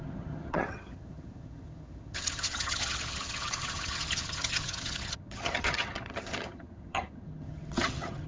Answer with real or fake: fake